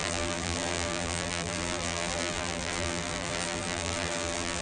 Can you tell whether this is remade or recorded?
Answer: remade